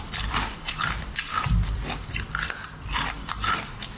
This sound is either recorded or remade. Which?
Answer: remade